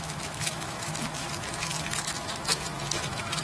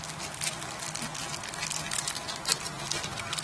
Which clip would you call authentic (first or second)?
second